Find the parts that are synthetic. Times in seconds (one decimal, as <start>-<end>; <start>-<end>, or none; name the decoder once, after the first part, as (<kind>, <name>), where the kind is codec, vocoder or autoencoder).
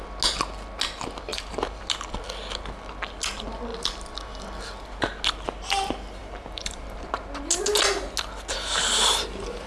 1.3-1.8 (vocoder, BigVGAN v2); 6.2-7.1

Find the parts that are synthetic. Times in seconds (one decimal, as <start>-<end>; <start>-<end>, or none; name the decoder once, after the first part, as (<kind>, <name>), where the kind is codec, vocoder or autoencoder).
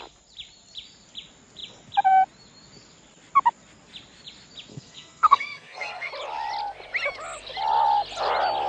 4.7-6.1 (codec, SNAC)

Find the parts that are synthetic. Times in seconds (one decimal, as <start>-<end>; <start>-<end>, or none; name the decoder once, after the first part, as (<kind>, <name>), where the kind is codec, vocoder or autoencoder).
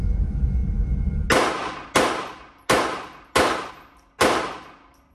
none